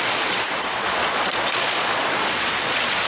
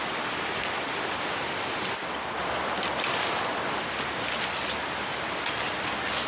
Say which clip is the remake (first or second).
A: first